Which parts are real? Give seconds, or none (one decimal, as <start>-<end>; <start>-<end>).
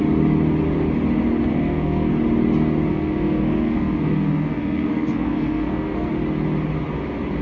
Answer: 0.0-1.5; 2.1-2.9; 6.1-7.4